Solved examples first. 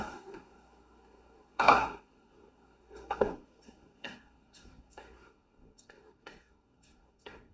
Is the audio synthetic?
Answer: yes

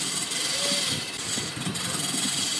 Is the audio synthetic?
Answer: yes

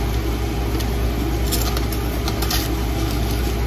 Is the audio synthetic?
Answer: no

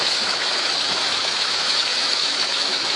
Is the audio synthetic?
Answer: yes